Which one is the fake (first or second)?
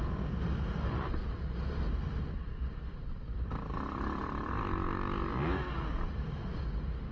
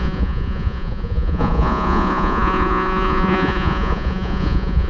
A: second